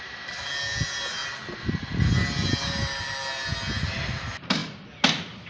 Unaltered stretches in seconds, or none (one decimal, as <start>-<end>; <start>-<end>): 0.0-5.5